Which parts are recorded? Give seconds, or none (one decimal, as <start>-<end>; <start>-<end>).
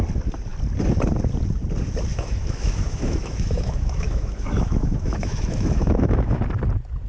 0.0-2.1; 6.4-7.1